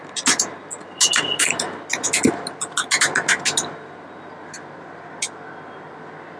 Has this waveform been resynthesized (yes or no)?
no